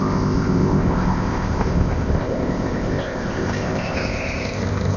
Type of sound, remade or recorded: remade